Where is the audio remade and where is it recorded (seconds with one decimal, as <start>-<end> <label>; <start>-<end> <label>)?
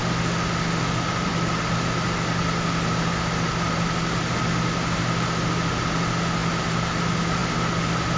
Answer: 0.0-8.2 recorded